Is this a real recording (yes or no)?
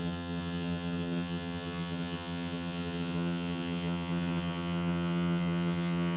no